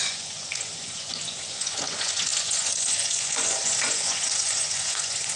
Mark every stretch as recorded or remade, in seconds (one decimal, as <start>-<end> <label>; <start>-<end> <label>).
0.0-5.4 remade